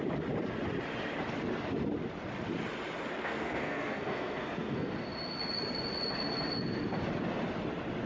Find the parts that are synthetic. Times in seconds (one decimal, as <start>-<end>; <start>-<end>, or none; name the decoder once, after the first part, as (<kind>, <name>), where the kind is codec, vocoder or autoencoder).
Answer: 3.2-4.9 (codec, SNAC)